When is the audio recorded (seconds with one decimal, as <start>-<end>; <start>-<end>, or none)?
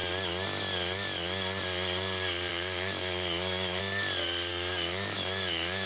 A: 0.0-2.5; 3.8-4.5